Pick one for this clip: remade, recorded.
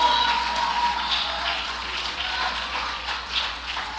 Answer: remade